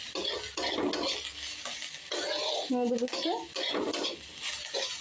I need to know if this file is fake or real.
real